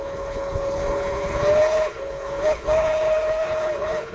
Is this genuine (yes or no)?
no